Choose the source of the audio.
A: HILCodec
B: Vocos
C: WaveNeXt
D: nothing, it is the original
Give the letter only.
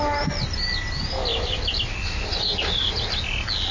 D